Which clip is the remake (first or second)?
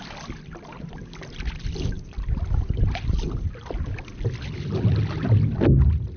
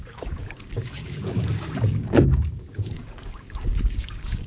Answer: second